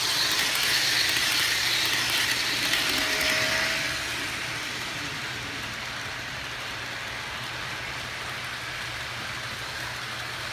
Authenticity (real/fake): real